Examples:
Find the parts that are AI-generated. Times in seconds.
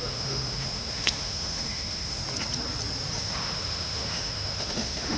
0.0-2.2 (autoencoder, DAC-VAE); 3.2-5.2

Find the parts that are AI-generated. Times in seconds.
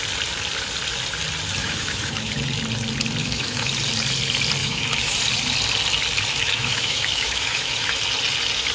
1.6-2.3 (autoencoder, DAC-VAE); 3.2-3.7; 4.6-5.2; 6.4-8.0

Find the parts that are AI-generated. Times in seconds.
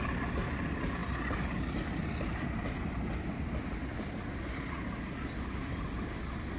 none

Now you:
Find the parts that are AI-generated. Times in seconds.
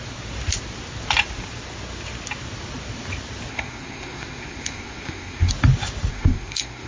3.5-5.5 (codec, SNAC); 6.1-6.9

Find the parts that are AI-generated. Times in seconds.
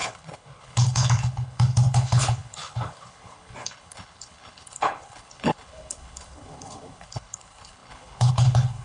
0.0-8.8 (codec, HILCodec)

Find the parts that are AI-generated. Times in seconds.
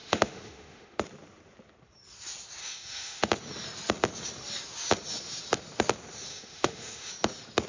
0.0-1.0 (autoencoder, DAC-VAE); 2.6-3.3; 6.3-7.1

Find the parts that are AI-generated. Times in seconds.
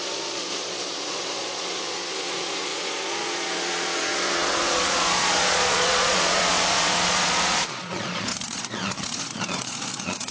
0.0-10.3 (vocoder, Vocos)